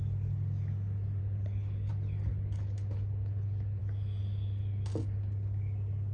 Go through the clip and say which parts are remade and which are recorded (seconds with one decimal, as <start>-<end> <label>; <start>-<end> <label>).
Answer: 0.0-1.2 recorded; 1.2-1.9 remade; 1.9-2.3 recorded; 2.3-3.8 remade; 3.8-6.1 recorded